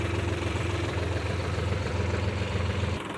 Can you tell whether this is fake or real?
fake